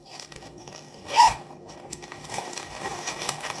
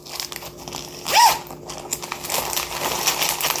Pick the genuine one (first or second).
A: second